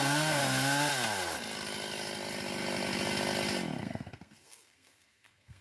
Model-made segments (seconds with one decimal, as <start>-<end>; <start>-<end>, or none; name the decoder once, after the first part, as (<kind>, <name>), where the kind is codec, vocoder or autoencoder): 0.0-0.4 (codec, SNAC); 3.8-5.6